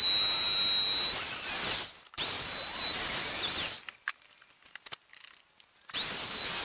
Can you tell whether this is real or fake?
real